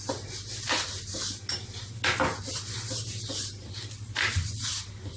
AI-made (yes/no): no